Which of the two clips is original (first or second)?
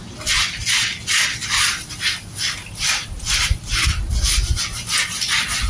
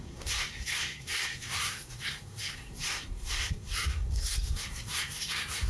first